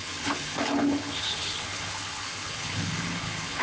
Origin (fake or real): fake